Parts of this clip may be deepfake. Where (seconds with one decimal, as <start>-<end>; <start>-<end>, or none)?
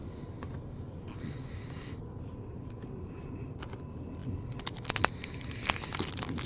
none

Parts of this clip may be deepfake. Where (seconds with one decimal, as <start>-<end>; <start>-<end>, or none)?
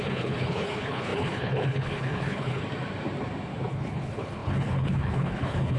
0.0-2.6; 3.7-5.8